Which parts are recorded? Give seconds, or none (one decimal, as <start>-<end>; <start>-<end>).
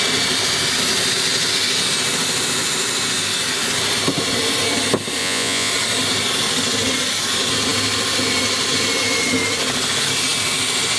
0.0-5.2; 5.7-11.0